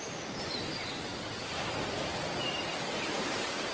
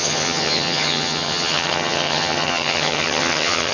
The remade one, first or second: second